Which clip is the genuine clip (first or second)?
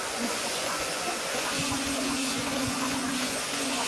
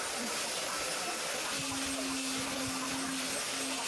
second